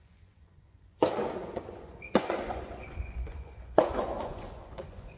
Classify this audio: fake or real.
fake